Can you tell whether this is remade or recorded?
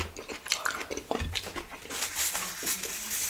recorded